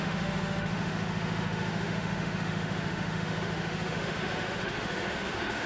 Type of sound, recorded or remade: remade